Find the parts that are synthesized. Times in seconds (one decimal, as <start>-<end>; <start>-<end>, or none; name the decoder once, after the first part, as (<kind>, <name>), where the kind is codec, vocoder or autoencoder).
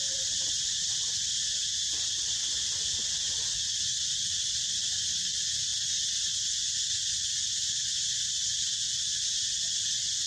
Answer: none